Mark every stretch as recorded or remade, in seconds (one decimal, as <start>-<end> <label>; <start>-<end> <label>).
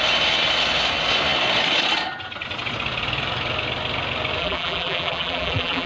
0.0-4.4 recorded; 4.4-5.9 remade